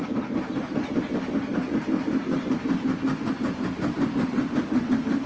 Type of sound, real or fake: real